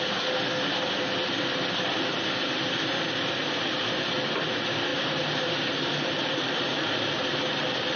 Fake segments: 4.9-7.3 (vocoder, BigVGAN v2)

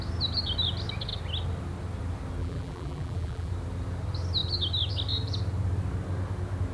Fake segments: 2.4-3.5 (vocoder, BigVGAN v2)

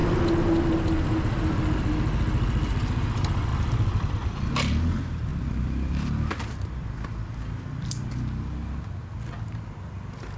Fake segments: 3.5-4.5 (vocoder, BigVGAN v2); 5.3-8.1

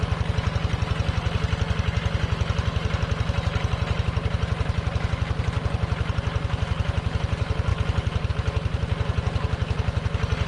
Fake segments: none

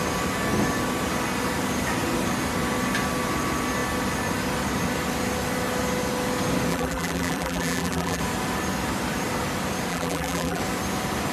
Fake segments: 6.7-8.2 (vocoder, BigVGAN v2); 9.9-10.6

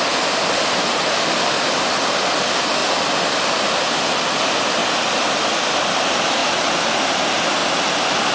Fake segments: 4.8-5.4 (vocoder, BigVGAN v2); 6.4-7.0

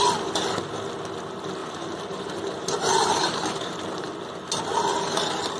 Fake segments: 1.6-4.1 (vocoder, BigVGAN v2)

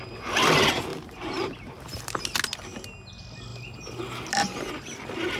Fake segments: 0.9-2.2 (vocoder, BigVGAN v2); 3.5-4.7